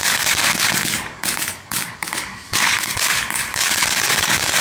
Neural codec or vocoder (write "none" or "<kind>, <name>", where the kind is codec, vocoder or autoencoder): codec, DAC